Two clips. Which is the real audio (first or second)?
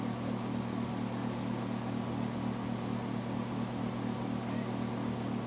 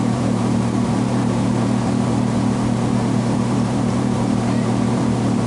first